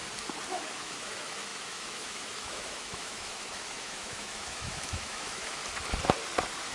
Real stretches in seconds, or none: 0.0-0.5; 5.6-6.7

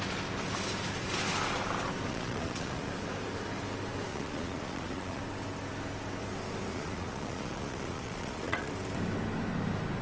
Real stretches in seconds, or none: 0.0-2.1; 2.9-4.1; 5.2-6.7; 8.7-10.0

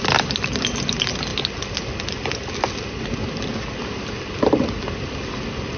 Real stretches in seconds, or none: 0.0-5.8